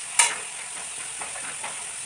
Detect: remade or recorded recorded